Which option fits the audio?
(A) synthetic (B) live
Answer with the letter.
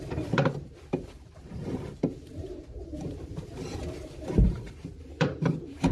A